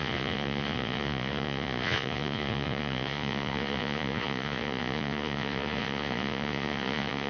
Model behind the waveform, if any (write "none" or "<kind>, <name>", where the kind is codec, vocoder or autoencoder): vocoder, Vocos